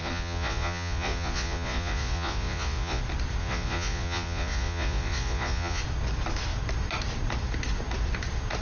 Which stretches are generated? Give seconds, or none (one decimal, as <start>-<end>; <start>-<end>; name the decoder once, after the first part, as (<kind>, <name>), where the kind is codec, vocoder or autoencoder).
0.0-3.0 (vocoder, Vocos); 3.4-5.8